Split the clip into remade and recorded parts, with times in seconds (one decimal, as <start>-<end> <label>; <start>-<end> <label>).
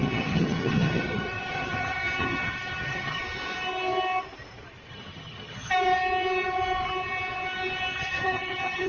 0.0-3.2 remade; 3.2-4.9 recorded; 4.9-5.7 remade; 5.7-7.9 recorded; 7.9-8.9 remade